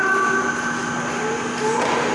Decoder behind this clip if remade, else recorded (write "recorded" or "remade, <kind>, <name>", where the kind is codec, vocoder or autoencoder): recorded